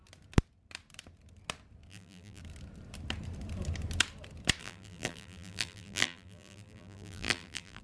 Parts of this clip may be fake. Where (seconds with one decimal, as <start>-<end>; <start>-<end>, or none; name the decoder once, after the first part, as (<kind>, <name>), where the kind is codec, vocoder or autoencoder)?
1.9-2.4 (vocoder, BigVGAN v2); 4.6-7.8